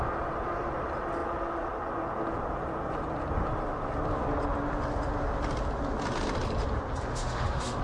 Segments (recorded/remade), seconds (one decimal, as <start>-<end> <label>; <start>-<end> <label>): 0.0-7.1 recorded; 7.1-7.8 remade